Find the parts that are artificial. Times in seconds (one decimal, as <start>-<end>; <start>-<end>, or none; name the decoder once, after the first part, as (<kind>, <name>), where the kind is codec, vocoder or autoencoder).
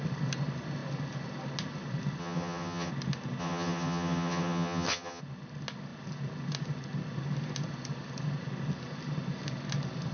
2.2-2.9 (vocoder, HiFi-GAN); 3.4-5.2